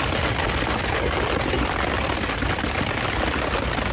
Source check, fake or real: real